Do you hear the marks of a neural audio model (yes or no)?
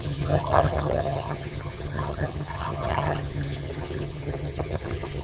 yes